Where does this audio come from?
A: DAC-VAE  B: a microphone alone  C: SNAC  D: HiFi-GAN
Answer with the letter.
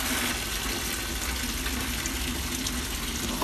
B